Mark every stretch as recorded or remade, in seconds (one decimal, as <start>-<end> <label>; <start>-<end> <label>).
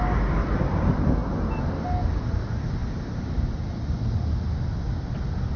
0.0-5.6 recorded